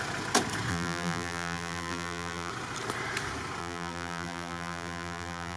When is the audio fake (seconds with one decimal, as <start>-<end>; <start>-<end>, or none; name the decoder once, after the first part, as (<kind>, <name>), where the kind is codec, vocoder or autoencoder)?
0.7-2.5 (vocoder, BigVGAN v2); 3.6-5.6